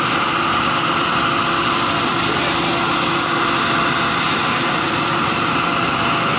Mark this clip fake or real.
real